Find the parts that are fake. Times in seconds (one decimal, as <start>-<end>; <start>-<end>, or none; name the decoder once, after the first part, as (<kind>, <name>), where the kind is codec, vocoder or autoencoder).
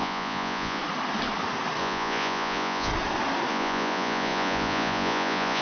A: 0.0-0.8 (vocoder, Vocos); 1.8-2.9; 3.5-5.6